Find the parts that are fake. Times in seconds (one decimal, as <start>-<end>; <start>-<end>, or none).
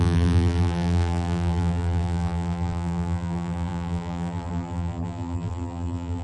0.0-6.2